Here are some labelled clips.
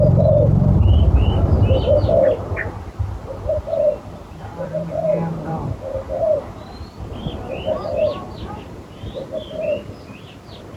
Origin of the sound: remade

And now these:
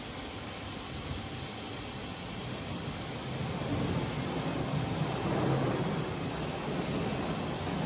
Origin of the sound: recorded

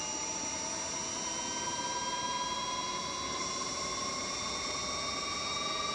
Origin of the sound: recorded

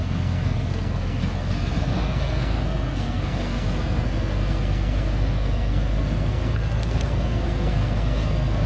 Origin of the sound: remade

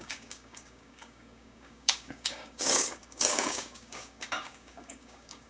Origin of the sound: remade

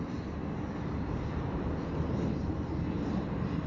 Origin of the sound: recorded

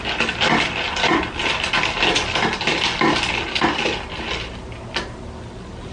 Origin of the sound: recorded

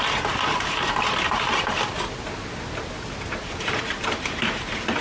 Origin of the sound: recorded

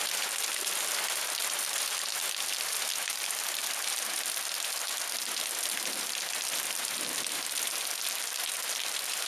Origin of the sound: recorded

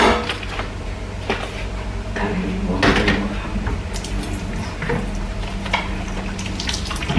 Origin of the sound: recorded